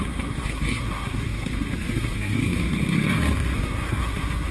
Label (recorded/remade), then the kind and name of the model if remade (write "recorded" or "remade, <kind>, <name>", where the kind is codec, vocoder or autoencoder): remade, codec, SNAC